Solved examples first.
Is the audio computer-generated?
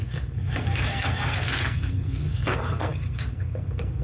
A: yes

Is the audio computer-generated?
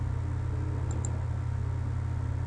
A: no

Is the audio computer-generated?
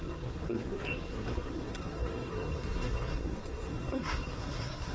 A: yes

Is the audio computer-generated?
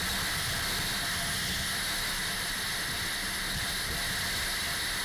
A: no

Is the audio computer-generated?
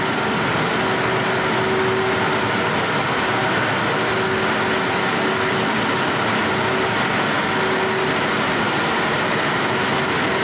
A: no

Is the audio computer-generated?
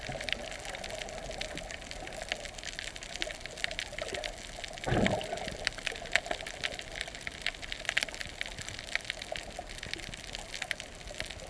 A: no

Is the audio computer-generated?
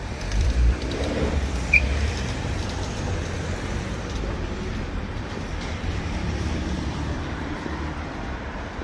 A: yes